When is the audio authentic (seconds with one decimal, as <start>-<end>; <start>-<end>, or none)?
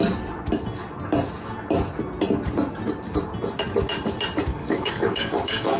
0.0-4.5